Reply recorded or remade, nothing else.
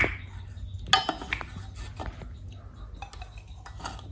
recorded